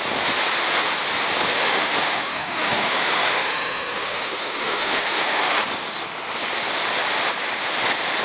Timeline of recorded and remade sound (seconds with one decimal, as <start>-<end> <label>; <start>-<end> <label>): 0.0-1.5 recorded; 1.5-5.6 remade; 5.6-8.2 recorded